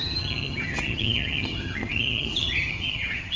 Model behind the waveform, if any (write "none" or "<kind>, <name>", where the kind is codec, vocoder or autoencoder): vocoder, HiFi-GAN